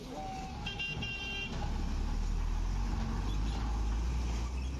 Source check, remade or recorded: recorded